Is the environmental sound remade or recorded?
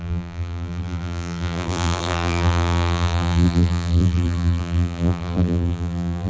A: remade